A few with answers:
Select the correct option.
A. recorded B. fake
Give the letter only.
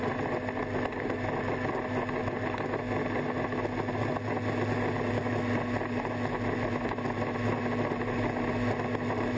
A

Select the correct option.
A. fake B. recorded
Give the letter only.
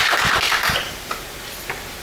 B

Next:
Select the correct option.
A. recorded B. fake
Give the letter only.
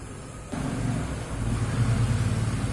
A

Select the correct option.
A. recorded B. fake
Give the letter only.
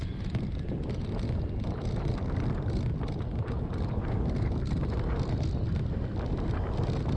A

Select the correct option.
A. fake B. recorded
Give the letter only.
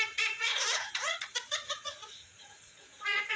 A